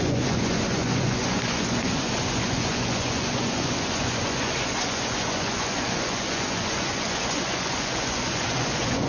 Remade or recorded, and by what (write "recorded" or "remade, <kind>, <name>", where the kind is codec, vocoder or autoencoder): remade, vocoder, Vocos